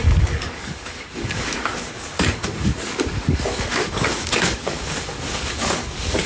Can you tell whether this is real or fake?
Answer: fake